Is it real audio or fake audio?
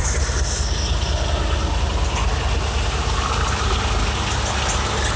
real